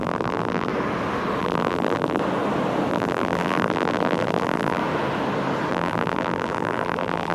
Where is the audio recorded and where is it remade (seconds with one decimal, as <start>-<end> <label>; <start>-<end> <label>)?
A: 0.0-0.7 remade; 0.7-1.4 recorded; 1.4-2.2 remade; 2.2-2.9 recorded; 2.9-4.8 remade; 4.8-5.7 recorded; 5.7-7.3 remade